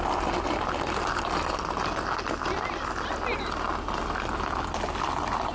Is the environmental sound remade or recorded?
recorded